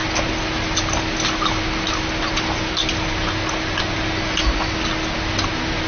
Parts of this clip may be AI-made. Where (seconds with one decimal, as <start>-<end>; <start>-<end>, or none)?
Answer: none